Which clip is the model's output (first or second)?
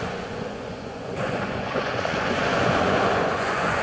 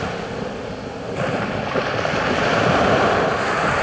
first